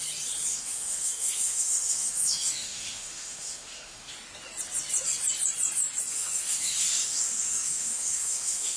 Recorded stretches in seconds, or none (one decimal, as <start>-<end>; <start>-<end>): 0.0-0.5; 4.1-6.1